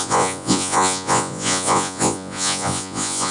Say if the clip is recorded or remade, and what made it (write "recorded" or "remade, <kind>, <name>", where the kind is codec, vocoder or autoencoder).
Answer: remade, vocoder, Vocos